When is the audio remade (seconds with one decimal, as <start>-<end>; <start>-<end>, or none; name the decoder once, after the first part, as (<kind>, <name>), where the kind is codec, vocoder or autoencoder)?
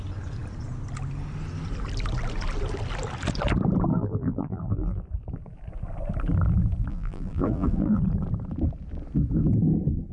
3.9-5.0 (vocoder, BigVGAN v2); 6.9-8.0